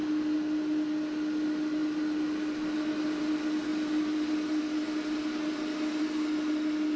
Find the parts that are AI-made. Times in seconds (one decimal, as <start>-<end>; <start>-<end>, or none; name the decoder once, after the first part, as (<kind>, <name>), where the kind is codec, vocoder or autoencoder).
none